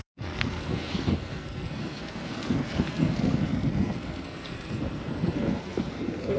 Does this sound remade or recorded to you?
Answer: remade